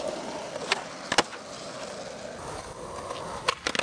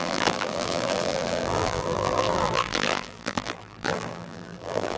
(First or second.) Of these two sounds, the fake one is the second